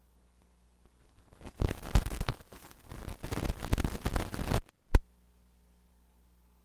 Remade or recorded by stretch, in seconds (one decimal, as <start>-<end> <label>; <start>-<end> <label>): 0.0-3.0 remade; 3.0-5.9 recorded; 5.9-6.6 remade